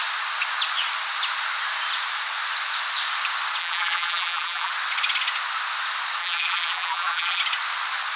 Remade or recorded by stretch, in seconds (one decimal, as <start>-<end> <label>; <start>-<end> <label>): 0.0-3.6 recorded; 3.6-4.7 remade; 4.7-6.2 recorded; 6.2-7.4 remade; 7.4-8.2 recorded